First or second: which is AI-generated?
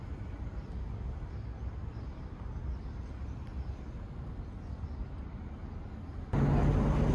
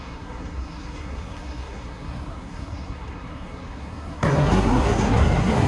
second